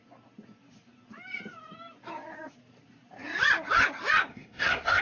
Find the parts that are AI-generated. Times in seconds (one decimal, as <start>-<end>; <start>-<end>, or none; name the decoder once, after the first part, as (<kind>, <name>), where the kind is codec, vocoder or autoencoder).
4.3-5.0 (codec, SNAC)